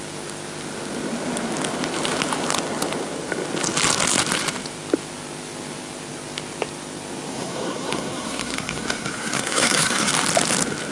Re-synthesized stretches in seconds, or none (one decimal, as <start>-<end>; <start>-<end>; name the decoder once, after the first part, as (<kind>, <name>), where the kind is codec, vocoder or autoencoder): 7.3-10.1 (codec, SNAC)

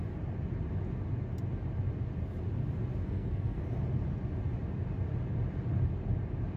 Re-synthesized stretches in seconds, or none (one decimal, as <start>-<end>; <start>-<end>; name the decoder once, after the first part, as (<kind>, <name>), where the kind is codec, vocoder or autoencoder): 3.0-3.6 (codec, SNAC)

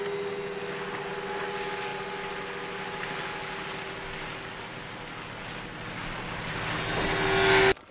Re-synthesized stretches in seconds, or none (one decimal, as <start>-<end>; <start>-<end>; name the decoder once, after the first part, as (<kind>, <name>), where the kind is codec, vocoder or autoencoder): none

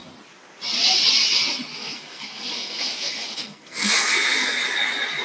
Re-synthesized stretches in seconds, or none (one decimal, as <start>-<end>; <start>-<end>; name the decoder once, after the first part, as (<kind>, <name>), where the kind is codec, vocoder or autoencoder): 1.7-4.6 (codec, SNAC)

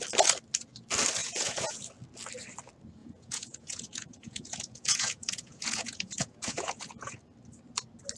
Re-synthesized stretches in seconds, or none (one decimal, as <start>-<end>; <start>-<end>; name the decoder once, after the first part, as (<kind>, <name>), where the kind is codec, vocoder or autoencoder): 1.2-1.8 (vocoder, Vocos); 3.0-7.2

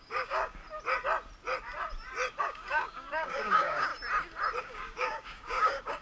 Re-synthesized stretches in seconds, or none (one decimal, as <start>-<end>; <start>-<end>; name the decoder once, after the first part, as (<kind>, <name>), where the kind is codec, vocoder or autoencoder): 0.0-0.6 (codec, DAC); 2.4-3.9; 4.6-6.0